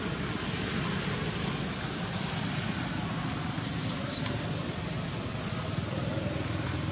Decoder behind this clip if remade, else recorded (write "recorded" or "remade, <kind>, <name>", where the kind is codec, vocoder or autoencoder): recorded